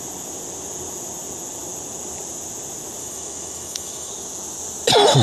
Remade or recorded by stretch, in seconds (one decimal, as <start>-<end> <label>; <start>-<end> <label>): 0.0-3.0 recorded; 3.0-4.1 remade; 4.1-5.2 recorded